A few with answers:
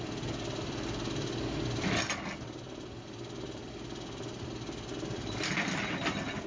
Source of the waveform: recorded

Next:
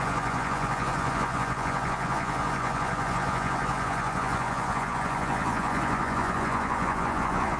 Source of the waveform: remade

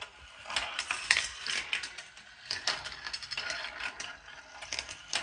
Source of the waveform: recorded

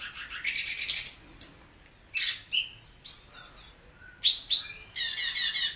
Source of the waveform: recorded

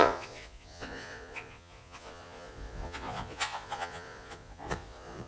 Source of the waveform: remade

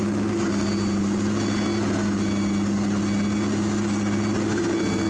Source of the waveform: recorded